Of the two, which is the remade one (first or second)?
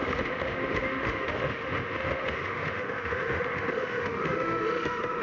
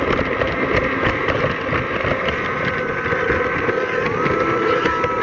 first